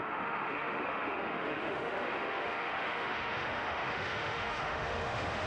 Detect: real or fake fake